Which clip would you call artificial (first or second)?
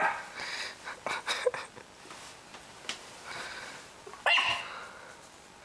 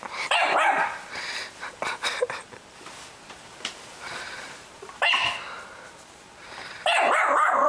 second